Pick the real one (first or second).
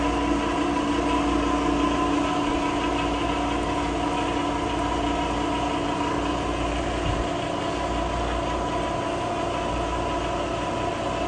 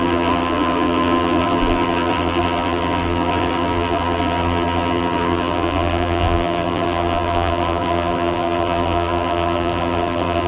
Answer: first